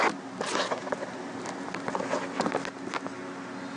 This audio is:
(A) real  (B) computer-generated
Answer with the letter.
A